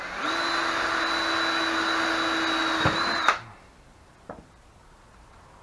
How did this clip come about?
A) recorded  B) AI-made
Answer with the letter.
A